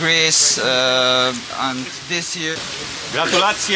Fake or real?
real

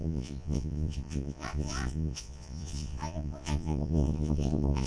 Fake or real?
fake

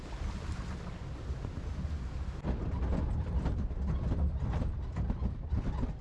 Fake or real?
real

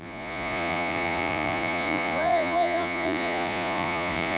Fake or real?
fake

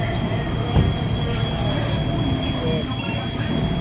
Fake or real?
real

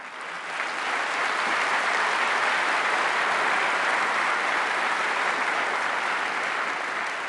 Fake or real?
real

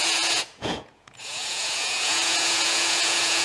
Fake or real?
fake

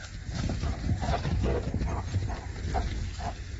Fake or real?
real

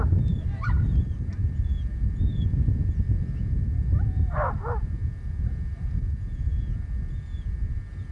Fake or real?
real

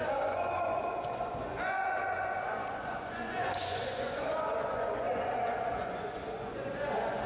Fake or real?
fake